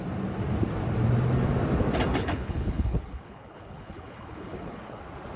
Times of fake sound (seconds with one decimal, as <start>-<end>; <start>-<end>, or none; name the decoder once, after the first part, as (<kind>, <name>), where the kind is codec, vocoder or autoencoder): 2.1-5.0 (codec, HILCodec)